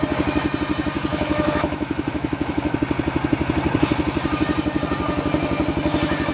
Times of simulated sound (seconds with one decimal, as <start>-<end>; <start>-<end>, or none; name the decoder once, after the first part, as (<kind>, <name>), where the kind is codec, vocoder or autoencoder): 1.1-2.7 (autoencoder, DAC-VAE)

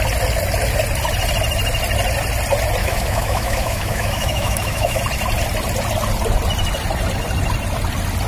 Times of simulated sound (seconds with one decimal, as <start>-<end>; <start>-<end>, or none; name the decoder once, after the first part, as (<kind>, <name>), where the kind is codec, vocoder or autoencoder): 2.8-5.0 (autoencoder, DAC-VAE)

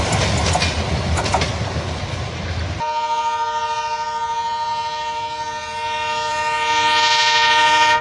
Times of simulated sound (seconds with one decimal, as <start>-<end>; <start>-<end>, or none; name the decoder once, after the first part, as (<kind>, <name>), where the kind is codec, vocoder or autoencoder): none

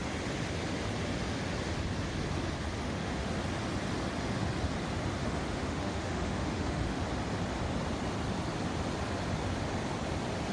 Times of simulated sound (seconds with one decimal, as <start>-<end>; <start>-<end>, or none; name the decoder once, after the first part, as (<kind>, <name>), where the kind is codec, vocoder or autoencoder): 2.8-3.3 (autoencoder, DAC-VAE); 5.2-7.0

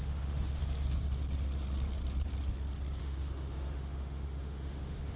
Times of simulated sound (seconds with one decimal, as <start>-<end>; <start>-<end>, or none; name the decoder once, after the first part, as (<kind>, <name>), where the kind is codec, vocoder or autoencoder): 0.0-0.6 (autoencoder, DAC-VAE); 3.0-5.2